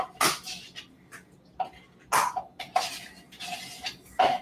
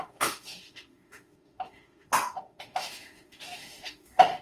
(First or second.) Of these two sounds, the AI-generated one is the second